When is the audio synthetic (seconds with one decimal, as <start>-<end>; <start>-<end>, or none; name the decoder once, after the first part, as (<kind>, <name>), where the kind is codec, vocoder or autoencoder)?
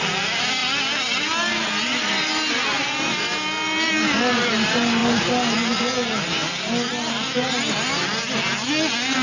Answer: none